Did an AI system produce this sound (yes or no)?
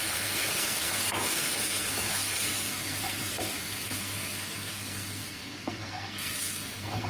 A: yes